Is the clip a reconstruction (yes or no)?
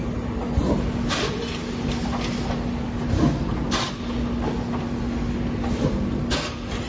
no